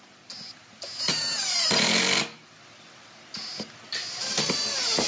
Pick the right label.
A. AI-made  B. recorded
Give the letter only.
B